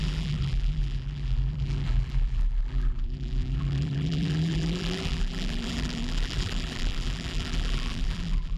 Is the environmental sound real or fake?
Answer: fake